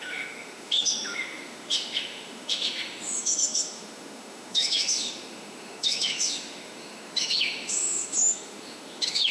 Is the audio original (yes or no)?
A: no